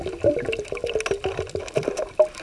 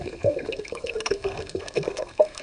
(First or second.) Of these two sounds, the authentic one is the first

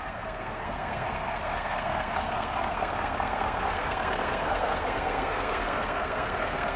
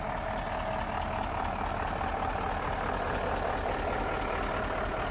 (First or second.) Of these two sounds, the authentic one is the second